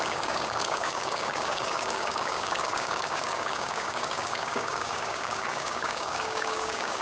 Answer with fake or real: fake